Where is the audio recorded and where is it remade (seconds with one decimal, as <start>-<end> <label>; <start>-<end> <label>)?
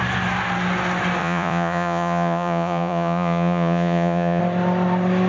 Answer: 0.0-1.2 recorded; 1.2-4.4 remade; 4.4-5.3 recorded